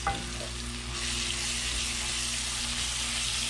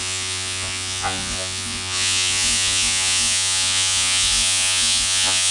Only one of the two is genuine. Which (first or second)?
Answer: first